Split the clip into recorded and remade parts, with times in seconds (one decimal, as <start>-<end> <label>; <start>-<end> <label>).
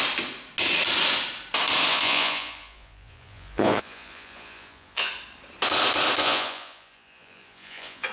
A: 0.0-1.9 recorded; 1.9-5.1 remade; 5.1-6.2 recorded; 6.2-8.1 remade